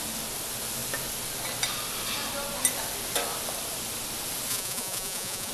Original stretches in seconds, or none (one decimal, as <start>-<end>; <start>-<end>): 0.0-4.5